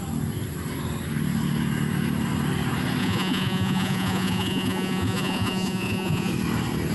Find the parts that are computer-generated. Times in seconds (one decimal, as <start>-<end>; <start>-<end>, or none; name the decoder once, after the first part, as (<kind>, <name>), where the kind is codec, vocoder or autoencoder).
3.0-6.3 (vocoder, Vocos)